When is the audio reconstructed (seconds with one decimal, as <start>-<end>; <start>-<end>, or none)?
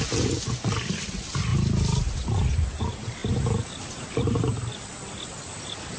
1.5-2.8; 3.2-4.2